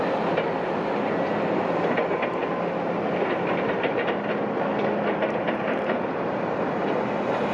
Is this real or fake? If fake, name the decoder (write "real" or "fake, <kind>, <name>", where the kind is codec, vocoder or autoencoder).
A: real